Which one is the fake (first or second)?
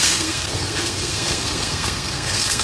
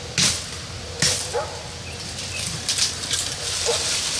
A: first